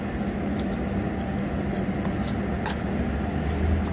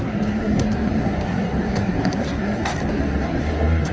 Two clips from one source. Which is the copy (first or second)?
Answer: second